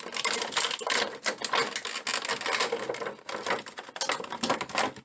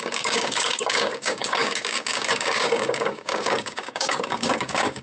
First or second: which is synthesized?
second